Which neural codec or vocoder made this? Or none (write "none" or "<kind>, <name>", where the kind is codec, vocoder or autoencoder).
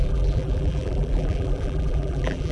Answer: vocoder, BigVGAN v2